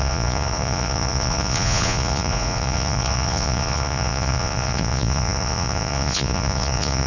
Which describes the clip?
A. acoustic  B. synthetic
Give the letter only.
B